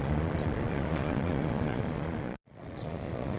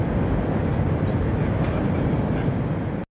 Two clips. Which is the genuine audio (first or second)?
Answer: second